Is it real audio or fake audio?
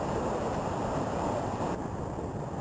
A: real